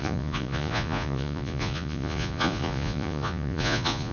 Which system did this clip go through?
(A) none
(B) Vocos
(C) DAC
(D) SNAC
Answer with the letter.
B